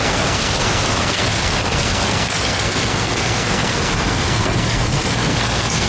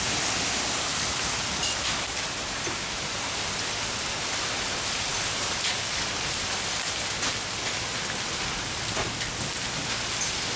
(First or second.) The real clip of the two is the second